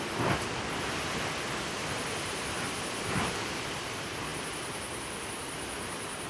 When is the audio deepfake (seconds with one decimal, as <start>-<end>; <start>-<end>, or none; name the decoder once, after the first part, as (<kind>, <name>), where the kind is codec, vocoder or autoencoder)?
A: 0.0-6.3 (vocoder, BigVGAN v2)